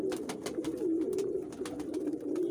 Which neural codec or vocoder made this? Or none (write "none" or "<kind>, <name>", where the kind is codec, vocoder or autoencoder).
none